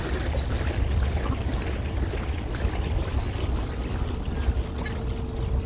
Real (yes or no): yes